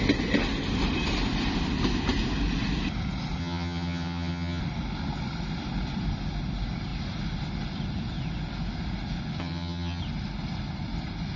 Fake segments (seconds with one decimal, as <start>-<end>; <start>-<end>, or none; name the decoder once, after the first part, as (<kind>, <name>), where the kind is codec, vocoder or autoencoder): 3.4-4.6 (vocoder, HiFi-GAN); 9.4-10.0